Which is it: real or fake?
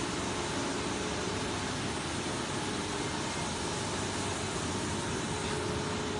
real